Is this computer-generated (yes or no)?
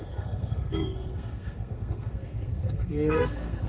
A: yes